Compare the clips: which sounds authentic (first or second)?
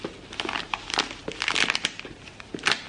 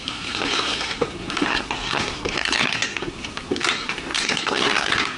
first